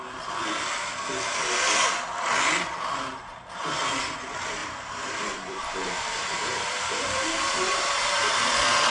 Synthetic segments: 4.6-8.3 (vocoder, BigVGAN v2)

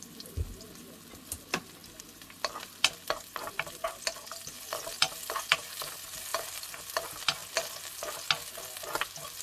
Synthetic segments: none

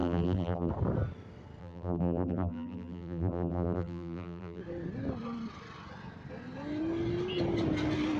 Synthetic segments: 0.0-0.7 (vocoder, BigVGAN v2); 1.6-4.6

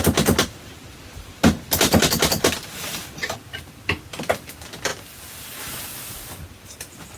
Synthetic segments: none

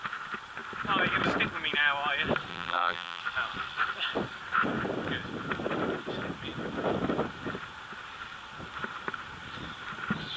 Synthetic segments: 2.5-3.2 (vocoder, BigVGAN v2)

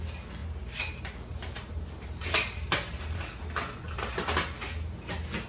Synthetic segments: 0.4-3.3 (vocoder, BigVGAN v2)

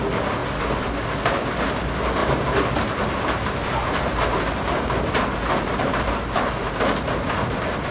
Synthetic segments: 2.2-6.5 (vocoder, BigVGAN v2)

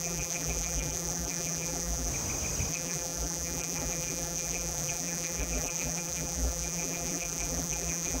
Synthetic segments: 0.0-2.1 (vocoder, BigVGAN v2); 2.7-8.2